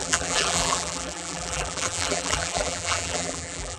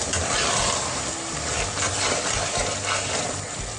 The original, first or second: second